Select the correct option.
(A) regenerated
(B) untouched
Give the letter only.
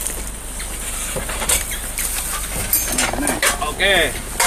B